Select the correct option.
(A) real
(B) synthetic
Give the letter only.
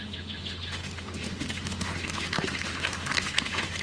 B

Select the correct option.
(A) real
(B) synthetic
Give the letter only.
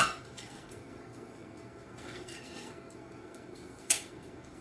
B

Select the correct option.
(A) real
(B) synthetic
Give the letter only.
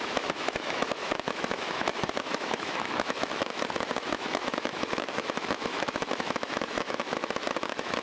B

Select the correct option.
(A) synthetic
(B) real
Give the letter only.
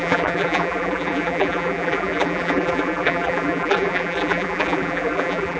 A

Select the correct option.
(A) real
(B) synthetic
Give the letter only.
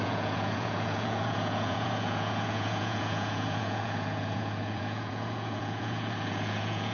B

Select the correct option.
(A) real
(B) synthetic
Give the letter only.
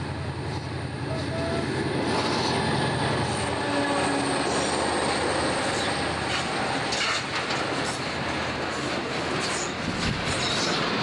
A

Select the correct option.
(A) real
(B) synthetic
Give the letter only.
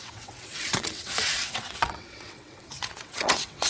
B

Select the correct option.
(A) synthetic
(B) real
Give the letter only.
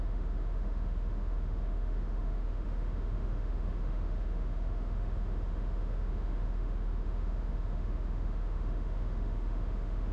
A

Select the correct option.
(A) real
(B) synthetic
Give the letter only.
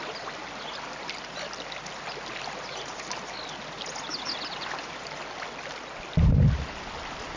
A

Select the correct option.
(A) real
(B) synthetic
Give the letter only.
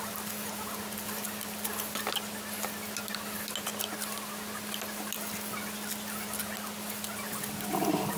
A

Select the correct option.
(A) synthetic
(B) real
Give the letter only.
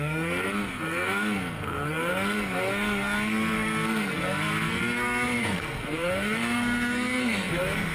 A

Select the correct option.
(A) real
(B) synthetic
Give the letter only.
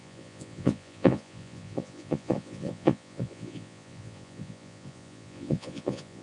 B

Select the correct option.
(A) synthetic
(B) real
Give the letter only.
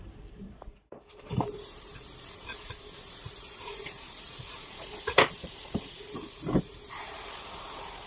A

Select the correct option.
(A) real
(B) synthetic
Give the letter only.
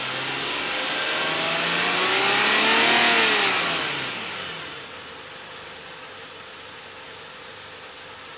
A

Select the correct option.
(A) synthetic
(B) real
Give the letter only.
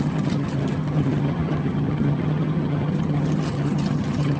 A